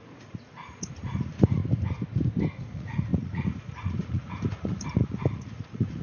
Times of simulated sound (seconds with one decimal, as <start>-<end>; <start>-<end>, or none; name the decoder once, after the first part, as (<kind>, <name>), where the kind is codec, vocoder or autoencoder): 0.0-1.6 (vocoder, Vocos); 2.6-6.0